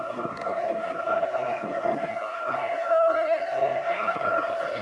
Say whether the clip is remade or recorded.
remade